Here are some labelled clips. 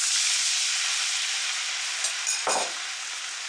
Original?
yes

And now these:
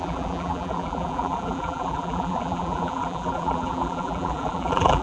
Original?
no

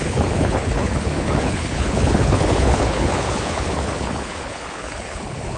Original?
no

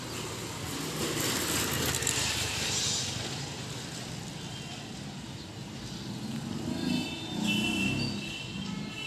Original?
yes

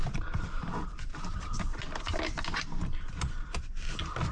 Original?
yes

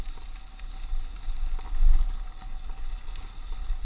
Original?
yes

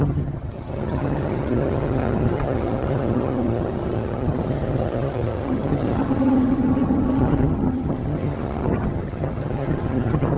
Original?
no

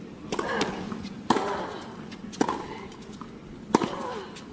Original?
yes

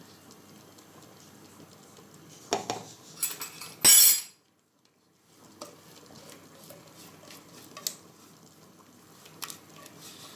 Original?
yes